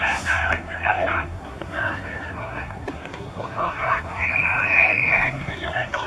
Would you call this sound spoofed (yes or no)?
yes